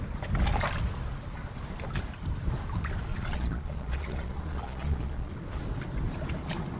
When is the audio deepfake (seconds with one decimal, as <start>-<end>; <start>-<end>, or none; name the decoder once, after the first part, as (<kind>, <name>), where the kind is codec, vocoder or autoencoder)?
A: 3.1-5.3 (vocoder, Vocos)